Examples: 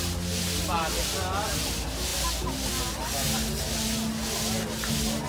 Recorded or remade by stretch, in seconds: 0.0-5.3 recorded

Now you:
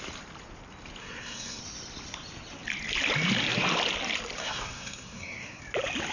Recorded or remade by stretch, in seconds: 0.0-1.0 recorded; 1.0-1.6 remade; 1.6-4.4 recorded; 4.4-5.6 remade; 5.6-6.1 recorded

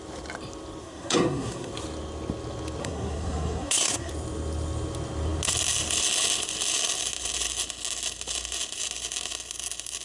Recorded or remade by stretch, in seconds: 0.0-0.8 recorded; 0.8-1.7 remade; 1.7-2.8 recorded; 2.8-4.1 remade; 4.1-10.0 recorded

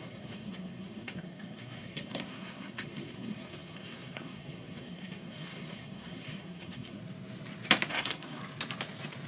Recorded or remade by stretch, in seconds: 0.0-7.0 remade; 7.0-7.9 recorded; 7.9-8.4 remade; 8.4-9.3 recorded

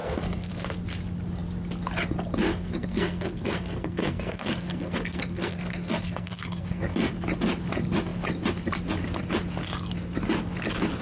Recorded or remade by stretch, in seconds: 0.0-0.5 remade; 0.5-2.5 recorded; 2.5-7.1 remade; 7.1-11.0 recorded